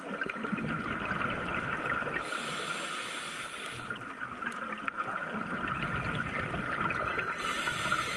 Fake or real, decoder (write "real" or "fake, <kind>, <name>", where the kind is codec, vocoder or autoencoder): real